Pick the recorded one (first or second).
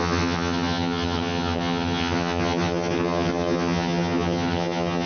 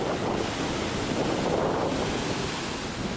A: second